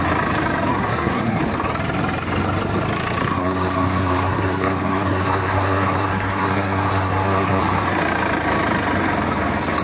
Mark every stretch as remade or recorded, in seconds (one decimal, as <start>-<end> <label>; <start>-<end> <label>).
0.0-0.7 recorded; 0.7-1.4 remade; 1.4-3.2 recorded; 3.2-7.6 remade; 7.6-9.8 recorded